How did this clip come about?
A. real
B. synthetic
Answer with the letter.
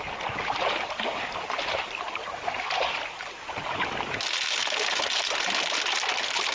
A